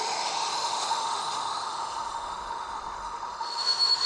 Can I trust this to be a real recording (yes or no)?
no